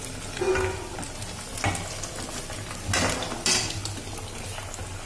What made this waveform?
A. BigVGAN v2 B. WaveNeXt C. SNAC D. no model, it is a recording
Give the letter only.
D